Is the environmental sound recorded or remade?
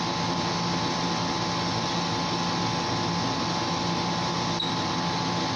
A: recorded